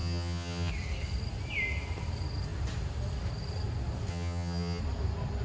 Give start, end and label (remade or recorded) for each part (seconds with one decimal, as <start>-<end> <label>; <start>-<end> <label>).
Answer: 0.0-0.7 remade; 0.7-4.1 recorded; 4.1-4.8 remade; 4.8-5.4 recorded